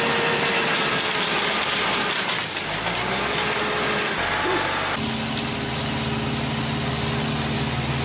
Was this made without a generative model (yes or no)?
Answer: yes